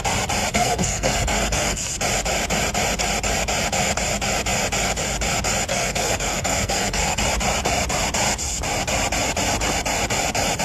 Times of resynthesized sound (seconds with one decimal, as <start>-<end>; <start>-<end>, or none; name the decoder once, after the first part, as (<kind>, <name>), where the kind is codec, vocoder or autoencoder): 0.5-1.9 (codec, SNAC); 5.7-7.2